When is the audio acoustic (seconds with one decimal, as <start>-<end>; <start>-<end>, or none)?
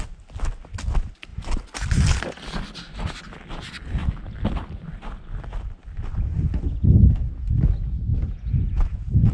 0.0-8.1